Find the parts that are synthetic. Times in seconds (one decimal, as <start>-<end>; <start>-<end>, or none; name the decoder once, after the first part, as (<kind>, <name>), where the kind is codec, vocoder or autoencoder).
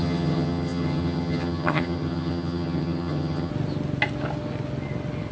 0.0-3.5 (vocoder, HiFi-GAN)